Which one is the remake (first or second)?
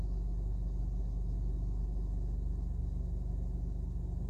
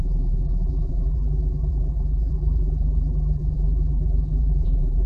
second